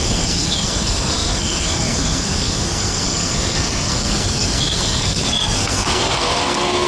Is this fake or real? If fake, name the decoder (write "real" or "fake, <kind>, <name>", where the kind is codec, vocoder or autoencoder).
fake, codec, SNAC